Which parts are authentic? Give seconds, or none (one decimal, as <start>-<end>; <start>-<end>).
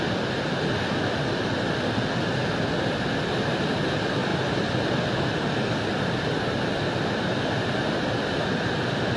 0.0-9.2